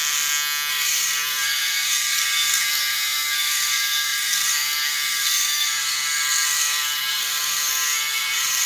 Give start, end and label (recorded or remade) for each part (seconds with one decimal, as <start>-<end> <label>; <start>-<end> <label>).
0.0-0.7 recorded; 0.7-8.7 remade